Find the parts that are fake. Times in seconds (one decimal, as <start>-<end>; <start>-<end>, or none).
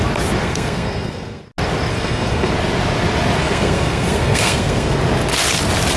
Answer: 0.4-1.4; 1.9-2.5; 3.4-5.0